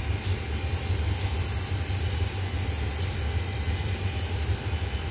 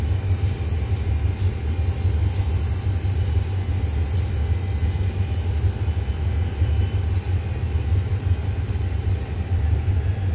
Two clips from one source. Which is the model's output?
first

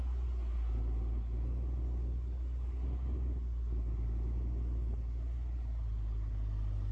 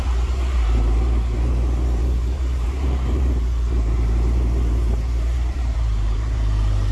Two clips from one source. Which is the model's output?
second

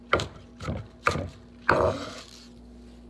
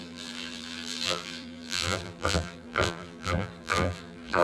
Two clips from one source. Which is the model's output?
second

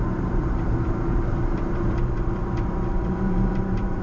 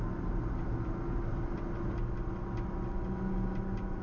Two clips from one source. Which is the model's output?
first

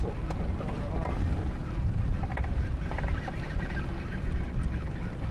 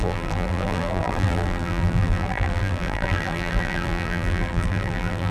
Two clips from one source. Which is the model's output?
second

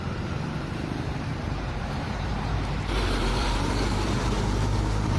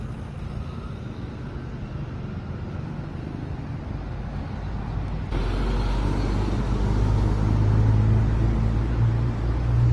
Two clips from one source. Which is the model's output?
first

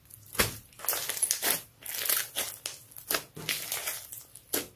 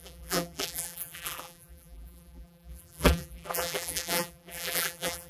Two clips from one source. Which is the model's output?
second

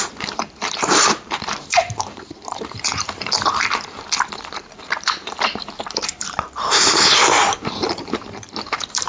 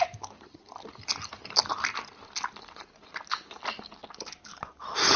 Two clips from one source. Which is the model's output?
first